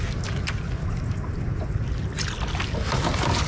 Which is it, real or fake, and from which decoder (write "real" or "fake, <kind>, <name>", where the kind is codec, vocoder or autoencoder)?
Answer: real